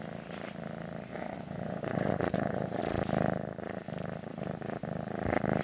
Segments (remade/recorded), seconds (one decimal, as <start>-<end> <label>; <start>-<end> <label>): 0.0-1.1 recorded; 1.1-2.8 remade; 2.8-5.6 recorded